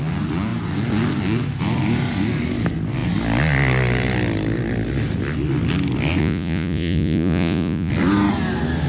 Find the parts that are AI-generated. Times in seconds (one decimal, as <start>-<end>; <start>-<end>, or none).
6.2-7.9